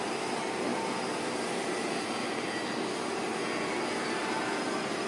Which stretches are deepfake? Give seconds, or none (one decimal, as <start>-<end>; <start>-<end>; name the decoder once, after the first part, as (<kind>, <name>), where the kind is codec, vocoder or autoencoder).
none